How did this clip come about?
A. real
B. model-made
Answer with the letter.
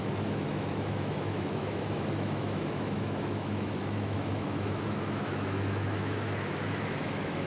B